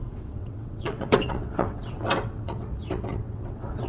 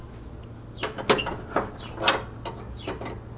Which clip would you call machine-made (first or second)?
first